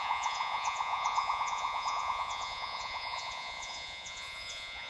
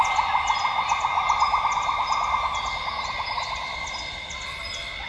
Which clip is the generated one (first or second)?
first